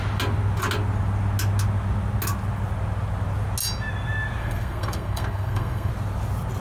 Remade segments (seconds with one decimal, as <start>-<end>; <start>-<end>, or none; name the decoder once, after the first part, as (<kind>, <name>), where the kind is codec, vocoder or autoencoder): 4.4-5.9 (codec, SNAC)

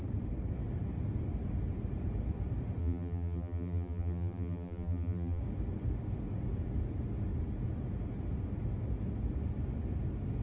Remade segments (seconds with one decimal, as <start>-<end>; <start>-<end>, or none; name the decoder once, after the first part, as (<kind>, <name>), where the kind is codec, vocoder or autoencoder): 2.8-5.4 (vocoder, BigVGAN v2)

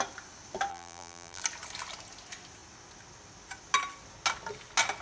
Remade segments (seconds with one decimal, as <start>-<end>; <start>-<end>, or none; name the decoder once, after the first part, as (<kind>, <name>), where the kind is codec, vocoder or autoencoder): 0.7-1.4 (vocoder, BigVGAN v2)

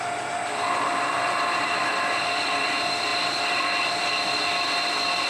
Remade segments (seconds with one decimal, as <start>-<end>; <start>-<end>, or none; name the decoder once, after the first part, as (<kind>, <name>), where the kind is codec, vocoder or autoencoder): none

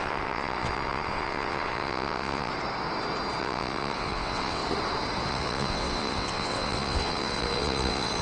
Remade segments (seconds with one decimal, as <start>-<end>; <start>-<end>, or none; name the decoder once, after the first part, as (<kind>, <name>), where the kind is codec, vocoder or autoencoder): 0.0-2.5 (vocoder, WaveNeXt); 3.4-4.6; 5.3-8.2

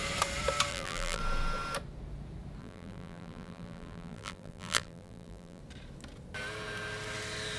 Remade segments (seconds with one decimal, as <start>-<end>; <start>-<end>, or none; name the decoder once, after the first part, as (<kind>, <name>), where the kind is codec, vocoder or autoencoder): 0.7-1.2 (vocoder, BigVGAN v2); 2.6-5.6